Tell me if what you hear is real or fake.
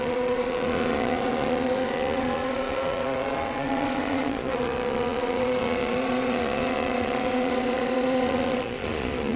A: fake